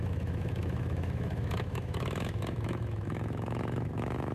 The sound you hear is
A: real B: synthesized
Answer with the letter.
B